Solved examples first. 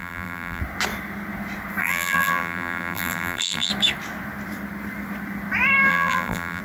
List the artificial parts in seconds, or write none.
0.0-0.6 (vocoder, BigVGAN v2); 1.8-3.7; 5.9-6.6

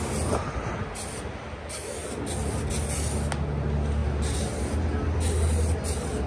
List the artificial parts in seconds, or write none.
2.0-2.7 (vocoder, BigVGAN v2)

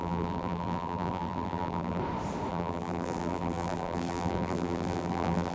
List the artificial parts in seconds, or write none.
0.0-2.0 (vocoder, BigVGAN v2); 2.5-5.5

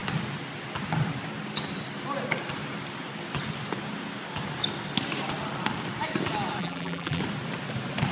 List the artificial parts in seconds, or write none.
6.6-7.2 (vocoder, BigVGAN v2)